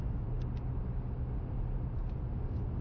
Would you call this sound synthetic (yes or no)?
no